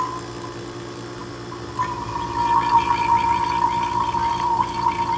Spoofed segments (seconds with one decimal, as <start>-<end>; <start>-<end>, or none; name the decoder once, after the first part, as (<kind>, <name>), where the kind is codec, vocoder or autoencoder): none